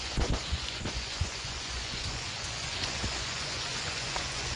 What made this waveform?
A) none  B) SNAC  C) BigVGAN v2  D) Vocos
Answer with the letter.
D